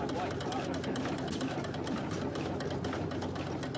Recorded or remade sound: recorded